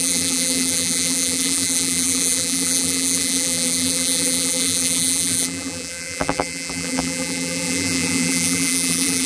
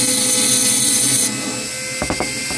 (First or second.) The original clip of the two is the second